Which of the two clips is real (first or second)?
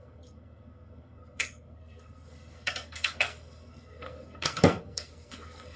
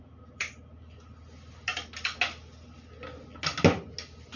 second